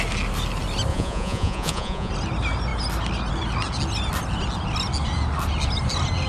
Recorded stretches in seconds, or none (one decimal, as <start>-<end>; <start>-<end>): 0.0-0.9; 2.1-6.3